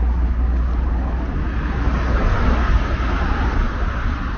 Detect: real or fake real